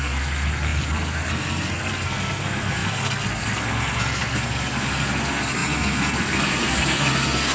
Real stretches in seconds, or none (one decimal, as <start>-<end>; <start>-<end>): none